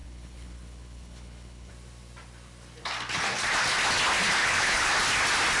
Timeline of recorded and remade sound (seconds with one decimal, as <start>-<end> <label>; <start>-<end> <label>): 0.0-1.7 remade; 1.7-4.4 recorded; 4.4-4.9 remade; 4.9-5.6 recorded